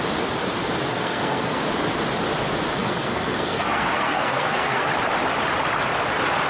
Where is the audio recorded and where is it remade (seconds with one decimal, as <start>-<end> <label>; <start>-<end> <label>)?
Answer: 0.0-0.9 recorded; 0.9-1.6 remade; 1.6-2.8 recorded; 2.8-4.9 remade; 4.9-6.5 recorded